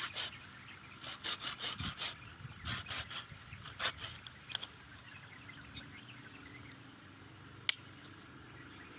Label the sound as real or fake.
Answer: real